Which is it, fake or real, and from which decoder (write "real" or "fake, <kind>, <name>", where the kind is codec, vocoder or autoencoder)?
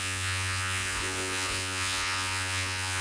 fake, vocoder, Vocos